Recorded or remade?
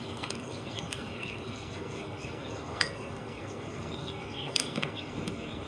remade